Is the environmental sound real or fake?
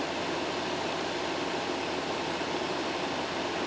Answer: real